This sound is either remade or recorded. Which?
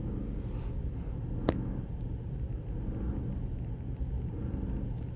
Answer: recorded